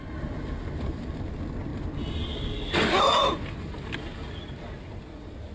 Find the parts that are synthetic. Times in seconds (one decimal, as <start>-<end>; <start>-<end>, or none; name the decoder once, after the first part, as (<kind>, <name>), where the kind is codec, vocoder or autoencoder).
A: none